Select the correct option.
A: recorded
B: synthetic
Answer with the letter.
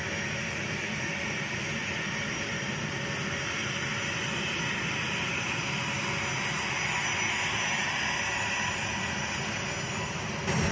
A